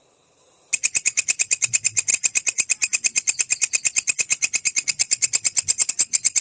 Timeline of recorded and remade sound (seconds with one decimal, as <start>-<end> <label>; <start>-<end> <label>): 0.0-6.4 recorded

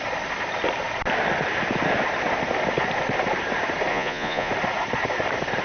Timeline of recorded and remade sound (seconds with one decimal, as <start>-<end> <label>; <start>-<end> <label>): 0.0-3.9 recorded; 3.9-4.5 remade; 4.5-5.6 recorded